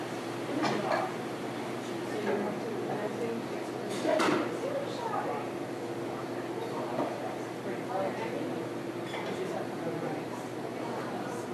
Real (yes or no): yes